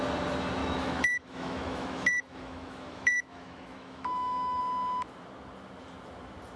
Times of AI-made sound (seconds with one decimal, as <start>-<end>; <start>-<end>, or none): 0.6-4.6